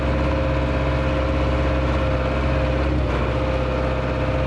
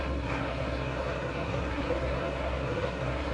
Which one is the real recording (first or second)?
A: first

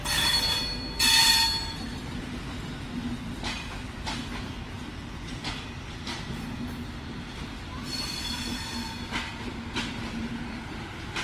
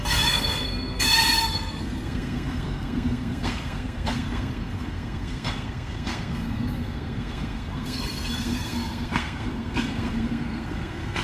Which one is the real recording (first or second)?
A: first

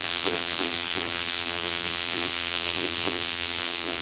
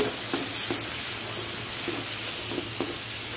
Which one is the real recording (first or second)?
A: second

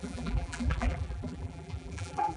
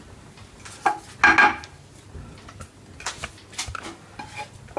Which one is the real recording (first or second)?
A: second